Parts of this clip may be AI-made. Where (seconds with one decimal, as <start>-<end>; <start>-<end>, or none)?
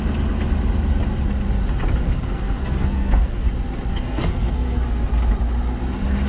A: 2.0-3.5; 3.9-5.1